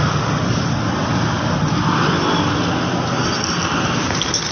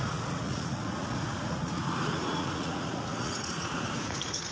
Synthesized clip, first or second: second